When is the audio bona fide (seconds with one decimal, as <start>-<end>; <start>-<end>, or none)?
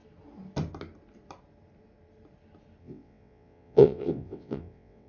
0.0-2.8